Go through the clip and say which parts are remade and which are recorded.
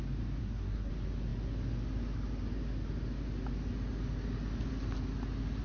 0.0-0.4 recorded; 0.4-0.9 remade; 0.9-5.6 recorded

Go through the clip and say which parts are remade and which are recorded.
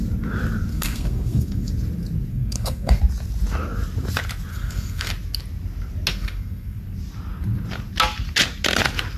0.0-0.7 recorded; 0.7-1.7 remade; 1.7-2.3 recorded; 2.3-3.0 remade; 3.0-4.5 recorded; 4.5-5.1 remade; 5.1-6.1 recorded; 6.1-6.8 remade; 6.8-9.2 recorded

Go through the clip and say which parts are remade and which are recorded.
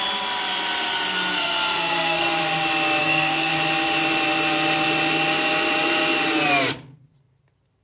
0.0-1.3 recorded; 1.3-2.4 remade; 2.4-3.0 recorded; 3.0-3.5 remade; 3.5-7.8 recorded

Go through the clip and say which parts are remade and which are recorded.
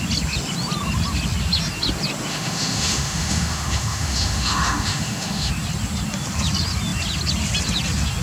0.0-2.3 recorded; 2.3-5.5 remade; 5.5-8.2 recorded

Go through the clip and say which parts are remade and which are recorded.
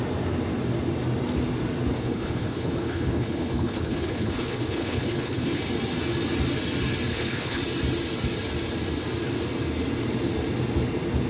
0.0-2.0 recorded; 2.0-5.6 remade; 5.6-7.1 recorded; 7.1-7.6 remade; 7.6-11.3 recorded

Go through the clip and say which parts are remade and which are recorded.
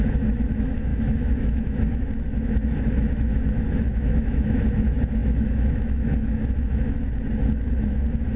0.0-8.4 remade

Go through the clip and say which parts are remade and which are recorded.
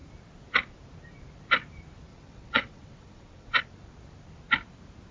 0.0-2.1 recorded; 2.1-3.6 remade; 3.6-5.1 recorded